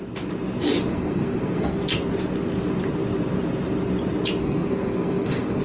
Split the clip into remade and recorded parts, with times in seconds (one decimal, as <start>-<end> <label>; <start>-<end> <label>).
0.0-0.9 recorded; 0.9-1.8 remade; 1.8-4.4 recorded; 4.4-5.6 remade